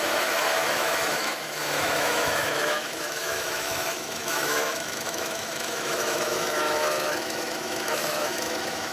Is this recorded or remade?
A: remade